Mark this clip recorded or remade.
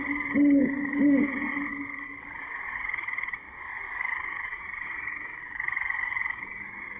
remade